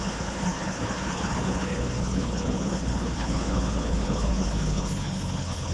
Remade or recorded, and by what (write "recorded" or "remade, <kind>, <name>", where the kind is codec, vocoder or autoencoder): remade, codec, HILCodec